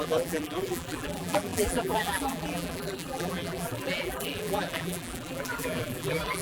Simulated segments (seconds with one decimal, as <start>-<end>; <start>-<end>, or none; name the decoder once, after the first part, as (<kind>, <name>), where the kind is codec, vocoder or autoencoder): 0.0-6.4 (vocoder, BigVGAN v2)